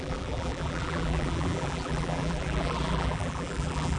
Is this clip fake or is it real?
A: fake